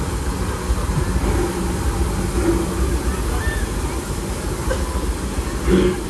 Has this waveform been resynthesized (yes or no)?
no